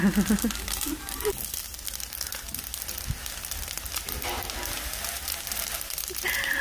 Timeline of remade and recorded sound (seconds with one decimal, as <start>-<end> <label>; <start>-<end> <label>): 0.0-6.6 recorded